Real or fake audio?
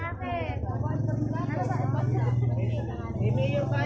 real